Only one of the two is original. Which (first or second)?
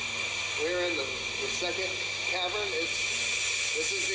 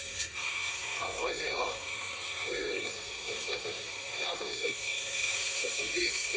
first